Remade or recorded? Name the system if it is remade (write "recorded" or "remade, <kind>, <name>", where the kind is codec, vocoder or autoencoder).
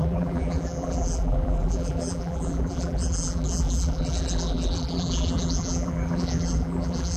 remade, vocoder, BigVGAN v2